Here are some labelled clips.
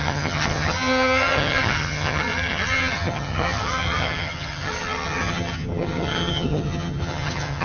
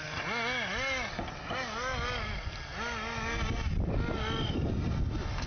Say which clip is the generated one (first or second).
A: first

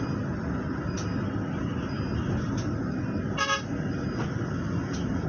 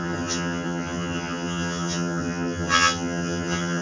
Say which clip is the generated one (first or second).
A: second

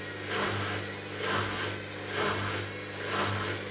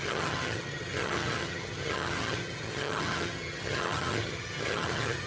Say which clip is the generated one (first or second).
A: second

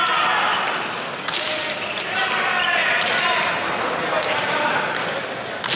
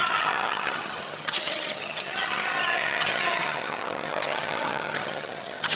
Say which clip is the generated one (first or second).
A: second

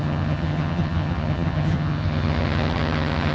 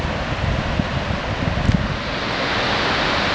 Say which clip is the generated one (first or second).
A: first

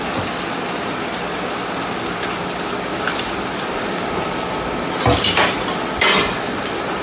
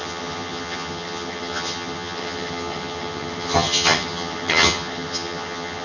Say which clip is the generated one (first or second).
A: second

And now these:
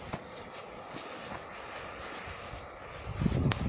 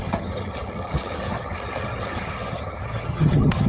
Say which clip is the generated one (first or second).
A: second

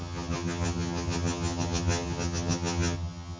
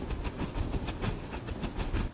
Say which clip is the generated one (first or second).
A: first